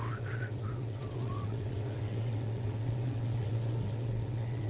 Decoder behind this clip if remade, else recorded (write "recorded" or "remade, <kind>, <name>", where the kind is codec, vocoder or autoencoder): remade, vocoder, WaveNeXt